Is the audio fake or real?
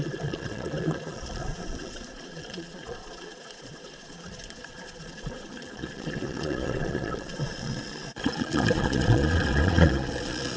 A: fake